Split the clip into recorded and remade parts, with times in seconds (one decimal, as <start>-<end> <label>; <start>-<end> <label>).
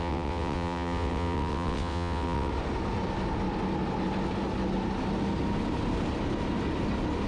0.0-2.5 remade; 2.5-7.3 recorded